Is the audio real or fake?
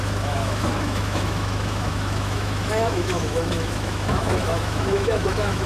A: fake